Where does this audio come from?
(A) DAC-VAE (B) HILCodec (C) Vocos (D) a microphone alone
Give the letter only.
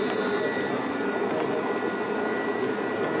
D